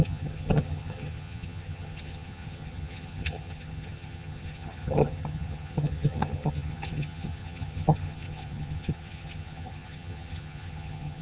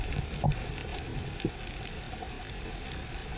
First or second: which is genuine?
second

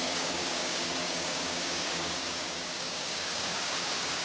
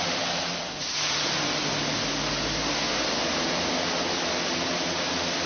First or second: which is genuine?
second